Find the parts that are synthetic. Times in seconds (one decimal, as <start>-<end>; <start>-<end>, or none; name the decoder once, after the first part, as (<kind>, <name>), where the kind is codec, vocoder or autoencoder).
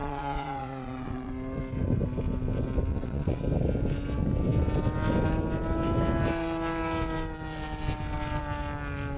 0.0-1.3 (vocoder, Vocos); 2.9-3.4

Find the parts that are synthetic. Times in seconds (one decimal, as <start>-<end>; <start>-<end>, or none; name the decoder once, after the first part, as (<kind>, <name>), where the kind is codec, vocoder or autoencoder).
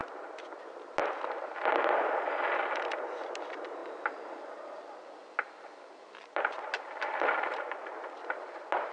0.6-1.0 (vocoder, BigVGAN v2); 3.1-8.9